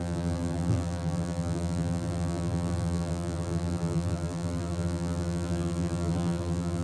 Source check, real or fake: fake